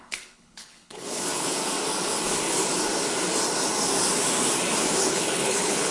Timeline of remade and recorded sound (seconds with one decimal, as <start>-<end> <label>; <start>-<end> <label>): 0.0-1.6 remade; 1.6-5.1 recorded; 5.1-5.9 remade